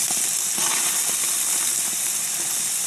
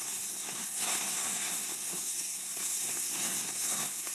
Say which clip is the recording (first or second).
first